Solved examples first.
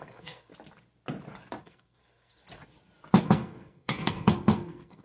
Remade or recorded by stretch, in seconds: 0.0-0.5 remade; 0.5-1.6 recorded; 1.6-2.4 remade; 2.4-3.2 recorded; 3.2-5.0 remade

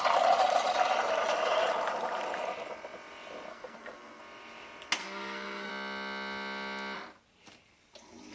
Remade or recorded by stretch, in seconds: 0.0-3.5 recorded; 3.5-4.2 remade; 4.2-5.0 recorded; 5.0-5.7 remade; 5.7-8.3 recorded

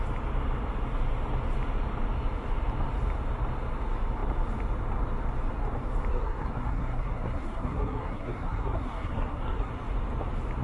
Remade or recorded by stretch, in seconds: 0.0-6.1 recorded; 6.1-9.7 remade; 9.7-10.6 recorded

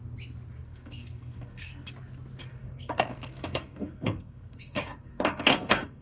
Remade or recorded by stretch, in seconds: 0.0-0.6 recorded; 0.6-1.9 remade; 1.9-2.4 recorded; 2.4-6.0 remade

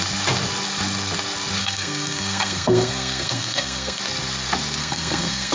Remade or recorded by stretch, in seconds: 0.0-1.6 recorded; 1.6-4.0 remade; 4.0-4.8 recorded; 4.8-5.5 remade

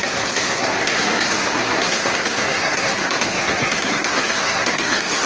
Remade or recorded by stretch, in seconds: 0.0-5.3 remade

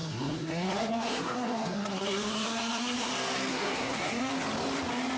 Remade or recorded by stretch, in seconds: 0.0-3.1 remade; 3.1-3.5 recorded; 3.5-4.3 remade; 4.3-5.2 recorded